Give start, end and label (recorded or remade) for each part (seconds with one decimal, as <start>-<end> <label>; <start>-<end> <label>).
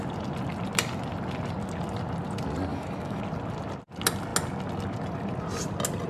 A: 0.0-2.7 recorded; 2.7-3.2 remade; 3.2-6.1 recorded